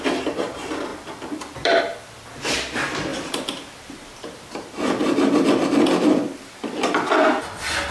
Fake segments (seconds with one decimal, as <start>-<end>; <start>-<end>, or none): 0.9-1.8; 3.1-5.5